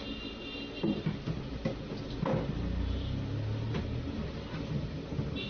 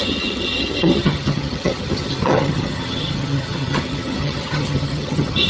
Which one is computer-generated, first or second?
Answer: second